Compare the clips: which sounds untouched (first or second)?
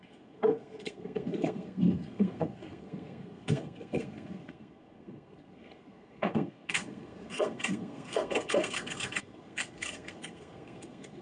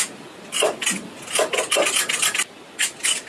second